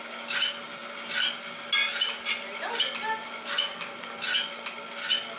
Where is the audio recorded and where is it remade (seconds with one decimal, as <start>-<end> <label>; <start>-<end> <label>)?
0.0-5.4 recorded